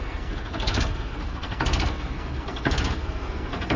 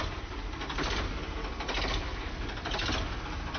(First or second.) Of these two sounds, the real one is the second